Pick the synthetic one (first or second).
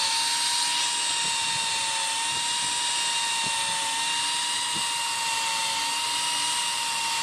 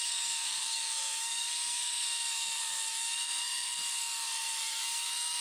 second